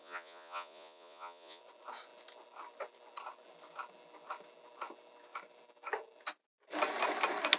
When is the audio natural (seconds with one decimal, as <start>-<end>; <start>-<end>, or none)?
1.6-7.6